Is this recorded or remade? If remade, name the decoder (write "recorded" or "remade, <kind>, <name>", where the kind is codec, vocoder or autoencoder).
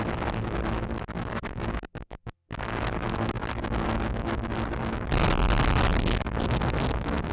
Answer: recorded